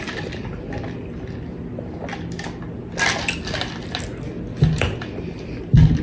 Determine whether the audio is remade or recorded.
recorded